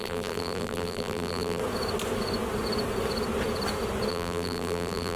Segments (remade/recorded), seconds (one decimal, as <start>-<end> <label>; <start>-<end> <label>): 0.0-1.6 remade; 1.6-4.1 recorded; 4.1-5.2 remade